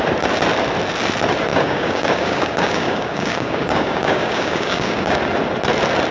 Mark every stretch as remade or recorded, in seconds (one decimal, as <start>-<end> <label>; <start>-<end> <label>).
0.0-1.5 recorded; 1.5-5.2 remade; 5.2-6.1 recorded